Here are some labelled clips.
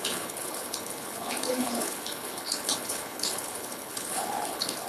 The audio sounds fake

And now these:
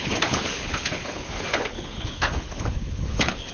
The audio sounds fake